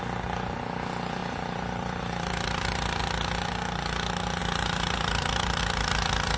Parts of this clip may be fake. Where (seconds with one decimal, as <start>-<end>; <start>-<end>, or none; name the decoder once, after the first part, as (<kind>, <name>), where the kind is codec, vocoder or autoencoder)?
1.2-3.0 (vocoder, BigVGAN v2); 4.4-5.6